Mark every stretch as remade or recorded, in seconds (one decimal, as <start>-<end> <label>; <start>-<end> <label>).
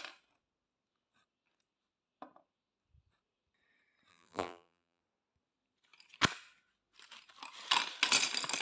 0.0-4.1 recorded; 4.1-5.0 remade; 5.0-8.6 recorded